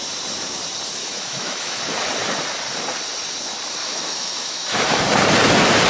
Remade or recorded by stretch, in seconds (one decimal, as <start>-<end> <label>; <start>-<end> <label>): 0.0-1.0 recorded; 1.0-1.8 remade; 1.8-3.8 recorded; 3.8-5.0 remade; 5.0-5.9 recorded